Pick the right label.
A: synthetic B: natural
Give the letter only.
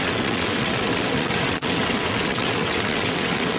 A